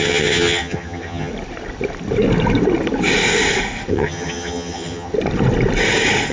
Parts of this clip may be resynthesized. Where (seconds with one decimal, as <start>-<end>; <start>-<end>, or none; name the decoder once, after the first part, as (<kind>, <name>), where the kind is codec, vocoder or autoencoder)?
0.0-1.3 (vocoder, HiFi-GAN); 3.9-5.1